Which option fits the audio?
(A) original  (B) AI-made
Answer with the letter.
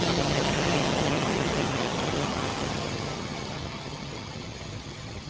B